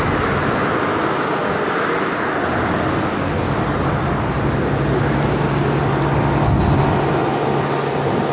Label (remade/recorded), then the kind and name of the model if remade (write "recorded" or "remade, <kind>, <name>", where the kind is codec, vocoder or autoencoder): recorded